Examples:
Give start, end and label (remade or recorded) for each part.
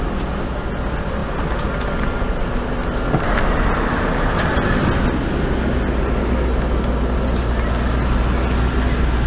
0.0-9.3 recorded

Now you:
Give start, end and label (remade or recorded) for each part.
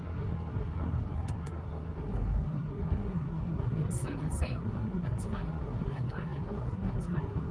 0.0-7.5 remade